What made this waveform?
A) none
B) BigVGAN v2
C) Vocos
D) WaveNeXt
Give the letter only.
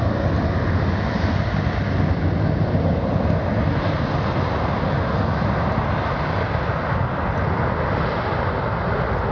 A